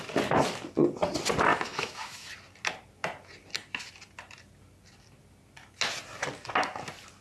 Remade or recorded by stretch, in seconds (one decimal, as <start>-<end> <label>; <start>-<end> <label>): 0.0-1.5 recorded; 1.5-2.3 remade; 2.3-7.2 recorded